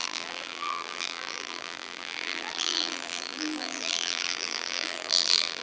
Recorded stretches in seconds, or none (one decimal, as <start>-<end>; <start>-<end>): none